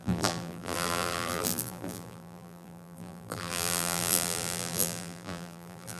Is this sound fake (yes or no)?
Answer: yes